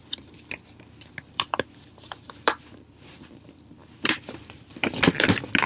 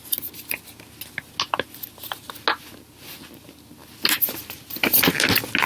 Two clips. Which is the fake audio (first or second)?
first